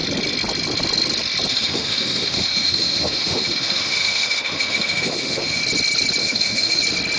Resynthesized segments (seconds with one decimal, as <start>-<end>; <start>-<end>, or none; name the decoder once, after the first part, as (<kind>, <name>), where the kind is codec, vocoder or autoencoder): 1.5-5.6 (autoencoder, DAC-VAE); 6.2-6.8

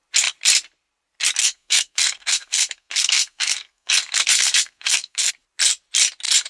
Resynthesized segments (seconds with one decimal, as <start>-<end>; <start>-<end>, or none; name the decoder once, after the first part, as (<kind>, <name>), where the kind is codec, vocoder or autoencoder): 1.4-5.3 (codec, SNAC)

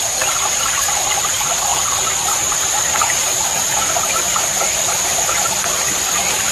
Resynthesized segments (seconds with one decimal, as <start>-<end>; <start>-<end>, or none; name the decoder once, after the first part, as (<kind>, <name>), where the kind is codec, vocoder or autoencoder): 1.7-4.4 (vocoder, BigVGAN v2)

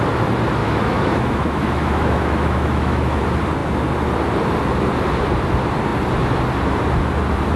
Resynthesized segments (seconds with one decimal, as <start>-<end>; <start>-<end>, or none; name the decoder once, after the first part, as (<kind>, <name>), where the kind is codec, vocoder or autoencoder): 0.6-3.2 (autoencoder, DAC-VAE)

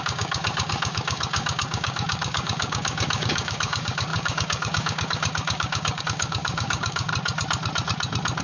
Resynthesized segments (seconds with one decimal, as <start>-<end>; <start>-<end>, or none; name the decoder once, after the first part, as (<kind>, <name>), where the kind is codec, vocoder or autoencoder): 0.0-7.1 (codec, DAC)